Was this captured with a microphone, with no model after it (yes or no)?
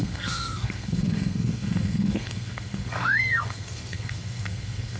no